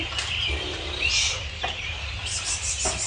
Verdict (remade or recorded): recorded